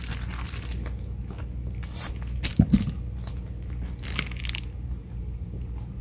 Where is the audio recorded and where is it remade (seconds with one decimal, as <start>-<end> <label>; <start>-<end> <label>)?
0.0-5.0 recorded; 5.0-6.0 remade